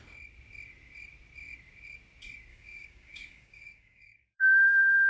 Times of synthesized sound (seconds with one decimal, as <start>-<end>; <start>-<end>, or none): 2.5-5.1